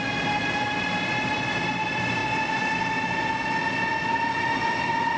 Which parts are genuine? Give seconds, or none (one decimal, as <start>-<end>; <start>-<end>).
0.0-5.2